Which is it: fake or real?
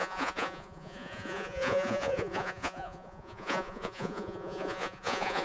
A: fake